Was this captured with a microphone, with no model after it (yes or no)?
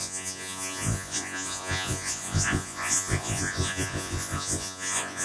no